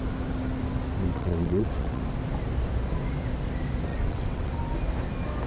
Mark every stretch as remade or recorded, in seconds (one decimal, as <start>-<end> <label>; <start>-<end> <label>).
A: 0.0-1.1 recorded; 1.1-2.0 remade; 2.0-3.9 recorded; 3.9-4.5 remade; 4.5-5.5 recorded